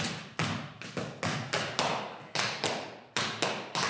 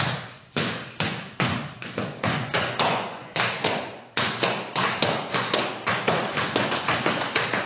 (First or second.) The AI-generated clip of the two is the second